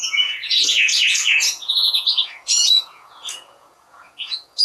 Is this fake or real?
fake